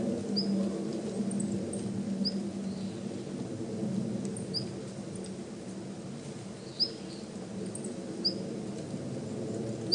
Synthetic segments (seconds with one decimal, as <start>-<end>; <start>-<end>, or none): none